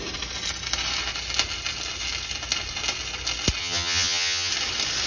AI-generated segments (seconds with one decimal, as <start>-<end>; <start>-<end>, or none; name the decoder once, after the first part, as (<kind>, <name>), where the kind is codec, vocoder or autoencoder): 3.6-4.5 (vocoder, HiFi-GAN)